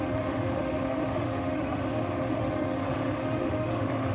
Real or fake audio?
fake